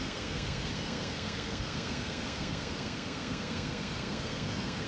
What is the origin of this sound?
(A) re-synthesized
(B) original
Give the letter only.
A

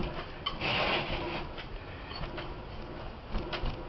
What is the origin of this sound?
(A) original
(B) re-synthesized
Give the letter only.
A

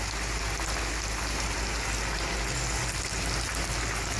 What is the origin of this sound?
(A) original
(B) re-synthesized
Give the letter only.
A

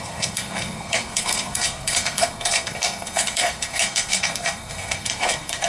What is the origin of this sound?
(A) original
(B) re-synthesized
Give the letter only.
B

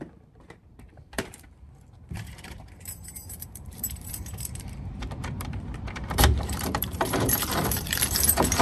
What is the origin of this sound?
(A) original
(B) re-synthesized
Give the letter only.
B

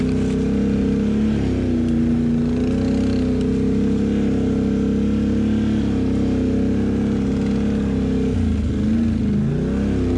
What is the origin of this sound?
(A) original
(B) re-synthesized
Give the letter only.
A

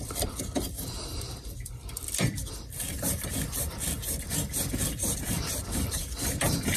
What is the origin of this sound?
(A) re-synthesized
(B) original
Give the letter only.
A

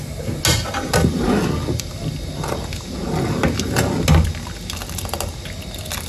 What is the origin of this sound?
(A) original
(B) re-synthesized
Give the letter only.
A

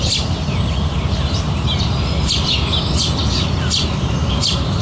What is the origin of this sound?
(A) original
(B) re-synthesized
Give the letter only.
A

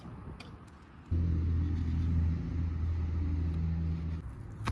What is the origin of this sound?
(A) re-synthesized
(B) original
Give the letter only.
B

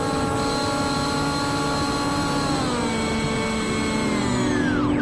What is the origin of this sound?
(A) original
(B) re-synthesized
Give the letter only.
A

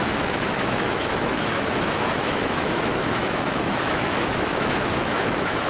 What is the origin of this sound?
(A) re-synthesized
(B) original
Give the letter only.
A